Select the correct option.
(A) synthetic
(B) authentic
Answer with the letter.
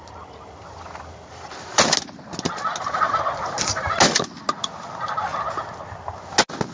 B